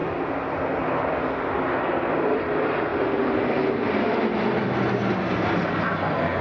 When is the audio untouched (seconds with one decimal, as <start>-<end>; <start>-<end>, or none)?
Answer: 0.0-6.4

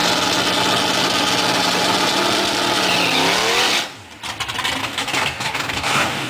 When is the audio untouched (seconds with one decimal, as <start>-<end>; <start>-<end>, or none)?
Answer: 0.0-4.8

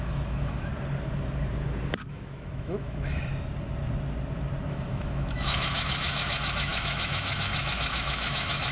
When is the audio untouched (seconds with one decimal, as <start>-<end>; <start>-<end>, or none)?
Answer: 0.7-2.1; 3.3-4.7

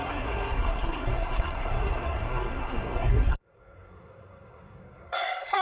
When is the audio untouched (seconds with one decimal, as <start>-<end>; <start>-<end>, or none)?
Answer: none

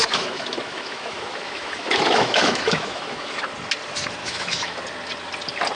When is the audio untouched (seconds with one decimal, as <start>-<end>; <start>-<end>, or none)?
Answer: 3.4-4.2; 4.8-5.7

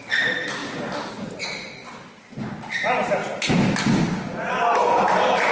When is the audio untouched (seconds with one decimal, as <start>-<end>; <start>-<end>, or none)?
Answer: 0.6-1.1; 1.8-2.6; 3.2-5.1